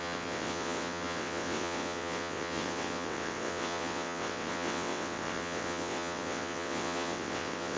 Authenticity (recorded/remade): remade